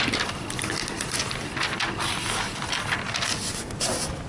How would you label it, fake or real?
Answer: real